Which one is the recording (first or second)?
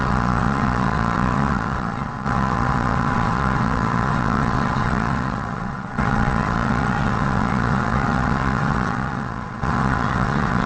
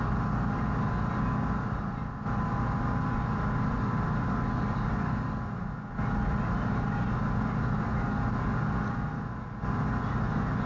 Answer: second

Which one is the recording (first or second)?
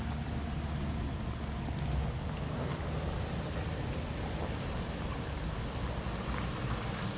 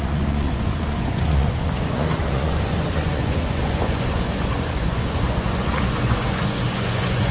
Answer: first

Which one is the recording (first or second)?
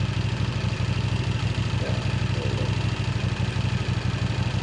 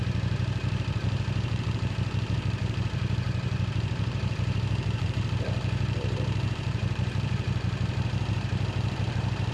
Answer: first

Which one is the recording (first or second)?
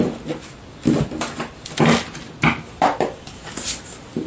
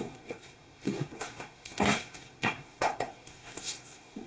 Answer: first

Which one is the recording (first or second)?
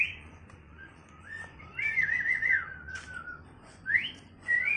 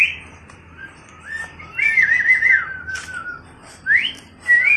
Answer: second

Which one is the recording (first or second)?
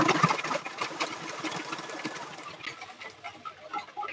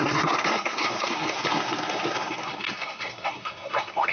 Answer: first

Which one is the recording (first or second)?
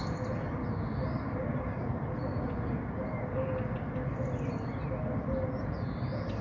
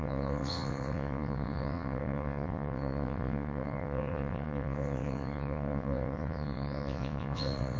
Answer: first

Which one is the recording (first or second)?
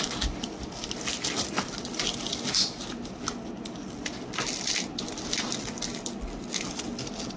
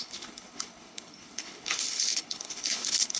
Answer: first